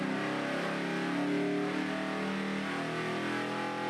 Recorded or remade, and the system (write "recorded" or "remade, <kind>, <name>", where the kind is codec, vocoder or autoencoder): recorded